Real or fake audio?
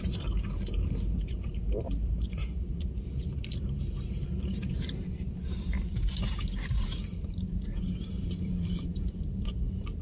fake